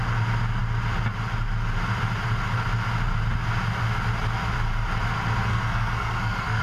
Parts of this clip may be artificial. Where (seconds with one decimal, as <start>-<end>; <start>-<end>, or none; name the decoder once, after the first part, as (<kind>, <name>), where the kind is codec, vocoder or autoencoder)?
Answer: 5.5-6.6 (codec, SNAC)